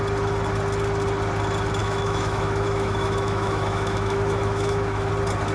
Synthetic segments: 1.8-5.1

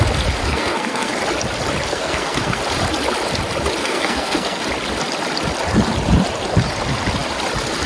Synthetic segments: 0.4-1.1; 1.9-2.6; 3.8-4.6